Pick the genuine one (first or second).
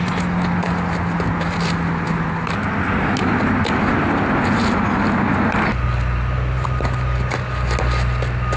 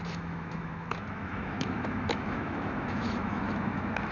first